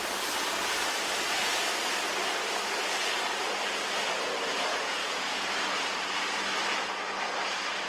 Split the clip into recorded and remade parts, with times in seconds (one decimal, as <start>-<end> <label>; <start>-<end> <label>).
0.0-4.7 recorded; 4.7-5.5 remade; 5.5-7.9 recorded